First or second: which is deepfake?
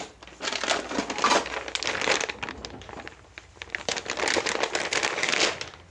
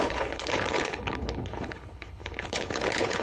second